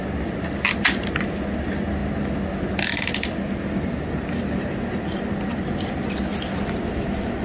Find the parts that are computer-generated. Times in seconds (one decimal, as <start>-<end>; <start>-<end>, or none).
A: none